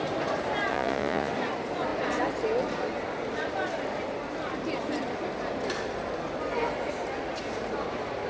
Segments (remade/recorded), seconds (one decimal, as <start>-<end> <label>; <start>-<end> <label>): 0.0-0.7 recorded; 0.7-1.3 remade; 1.3-8.3 recorded